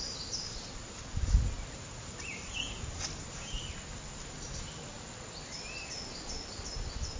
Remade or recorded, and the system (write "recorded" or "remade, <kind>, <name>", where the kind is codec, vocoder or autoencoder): recorded